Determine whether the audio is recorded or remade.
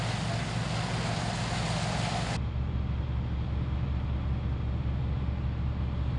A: recorded